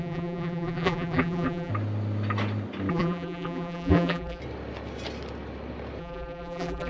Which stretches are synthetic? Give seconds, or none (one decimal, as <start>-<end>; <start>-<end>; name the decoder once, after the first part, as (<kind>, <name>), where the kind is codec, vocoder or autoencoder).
0.0-1.7 (vocoder, BigVGAN v2); 2.9-4.4; 6.0-6.9